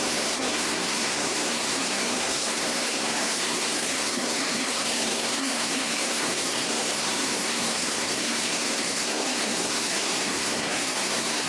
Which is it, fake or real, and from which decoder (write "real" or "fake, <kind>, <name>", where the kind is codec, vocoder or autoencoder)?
fake, codec, SNAC